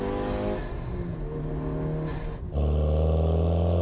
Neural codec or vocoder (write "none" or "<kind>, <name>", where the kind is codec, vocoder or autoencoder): none